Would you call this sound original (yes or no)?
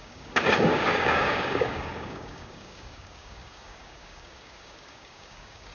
no